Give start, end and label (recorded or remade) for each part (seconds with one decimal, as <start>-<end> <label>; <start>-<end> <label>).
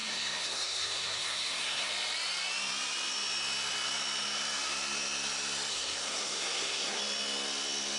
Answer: 0.0-1.9 remade; 1.9-5.7 recorded; 5.7-7.0 remade; 7.0-8.0 recorded